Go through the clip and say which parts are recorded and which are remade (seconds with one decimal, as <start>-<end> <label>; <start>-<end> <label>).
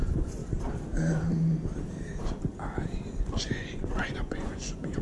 0.0-0.4 remade; 0.4-3.4 recorded; 3.4-5.0 remade